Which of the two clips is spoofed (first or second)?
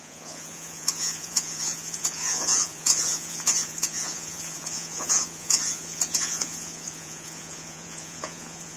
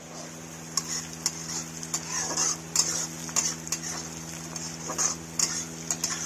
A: first